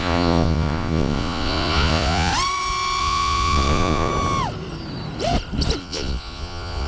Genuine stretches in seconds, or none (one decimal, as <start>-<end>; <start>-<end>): 2.3-3.0; 4.1-5.8